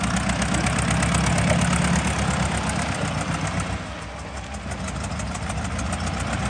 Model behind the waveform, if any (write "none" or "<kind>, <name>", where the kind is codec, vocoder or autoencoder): none